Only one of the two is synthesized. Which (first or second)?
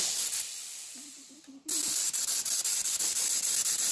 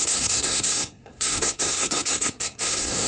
second